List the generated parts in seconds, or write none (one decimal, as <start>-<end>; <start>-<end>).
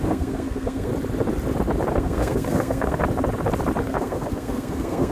0.0-0.9; 1.9-3.0; 3.8-5.1